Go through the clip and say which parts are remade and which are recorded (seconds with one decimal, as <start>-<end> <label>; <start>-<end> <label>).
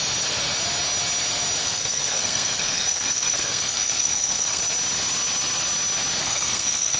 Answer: 0.0-1.6 recorded; 1.6-4.6 remade; 4.6-6.2 recorded; 6.2-7.0 remade